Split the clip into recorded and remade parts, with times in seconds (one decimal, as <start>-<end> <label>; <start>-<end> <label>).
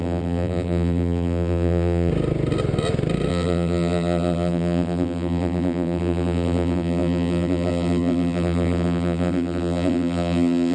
0.0-2.1 remade; 2.1-3.3 recorded; 3.3-10.7 remade